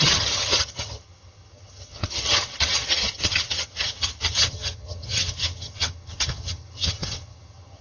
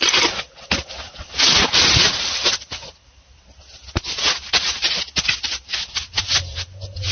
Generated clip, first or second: first